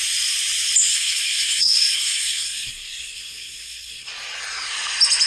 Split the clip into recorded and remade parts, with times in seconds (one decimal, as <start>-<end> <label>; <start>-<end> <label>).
0.0-0.9 recorded; 0.9-4.1 remade; 4.1-5.3 recorded